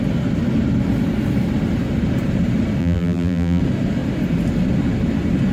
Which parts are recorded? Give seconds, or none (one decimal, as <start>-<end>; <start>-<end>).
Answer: 0.0-2.8; 3.6-5.5